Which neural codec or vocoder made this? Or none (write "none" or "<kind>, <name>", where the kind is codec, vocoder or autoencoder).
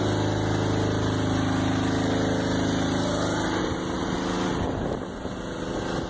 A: none